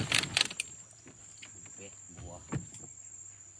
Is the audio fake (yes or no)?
no